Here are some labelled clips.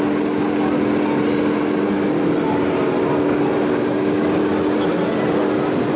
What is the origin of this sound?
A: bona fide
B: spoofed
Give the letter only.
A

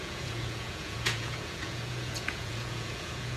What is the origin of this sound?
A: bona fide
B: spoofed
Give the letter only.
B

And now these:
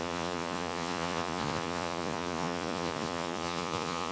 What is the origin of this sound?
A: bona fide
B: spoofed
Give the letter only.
B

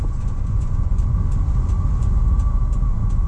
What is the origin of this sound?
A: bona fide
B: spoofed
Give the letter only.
B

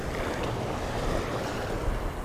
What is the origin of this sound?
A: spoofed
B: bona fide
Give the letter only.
B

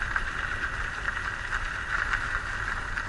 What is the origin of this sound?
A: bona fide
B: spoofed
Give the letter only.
A